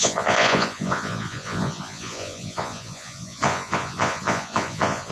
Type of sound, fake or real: fake